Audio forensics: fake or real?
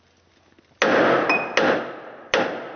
real